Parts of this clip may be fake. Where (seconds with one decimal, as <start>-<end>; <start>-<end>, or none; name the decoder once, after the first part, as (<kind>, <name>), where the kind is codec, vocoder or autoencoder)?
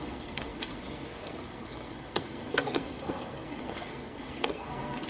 0.0-5.1 (codec, SNAC)